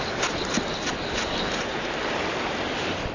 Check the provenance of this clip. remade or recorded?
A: recorded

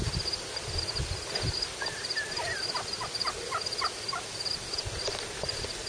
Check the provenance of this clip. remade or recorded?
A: recorded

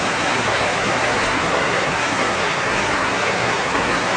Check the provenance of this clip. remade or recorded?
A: remade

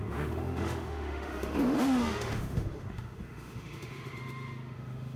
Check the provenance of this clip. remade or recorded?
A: remade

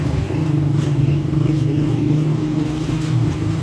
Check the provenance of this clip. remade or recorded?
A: remade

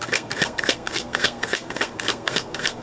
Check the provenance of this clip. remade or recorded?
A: remade